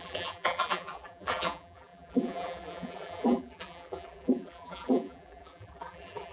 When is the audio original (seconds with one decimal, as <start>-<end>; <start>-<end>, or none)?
none